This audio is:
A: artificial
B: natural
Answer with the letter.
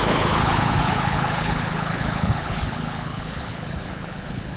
A